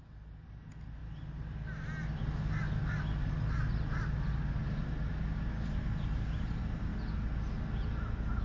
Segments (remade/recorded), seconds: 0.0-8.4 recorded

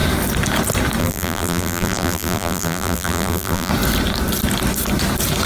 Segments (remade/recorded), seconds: 0.0-1.0 recorded; 1.0-3.7 remade; 3.7-5.5 recorded

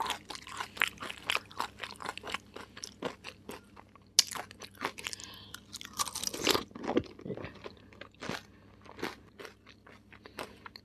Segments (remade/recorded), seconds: 0.0-10.8 recorded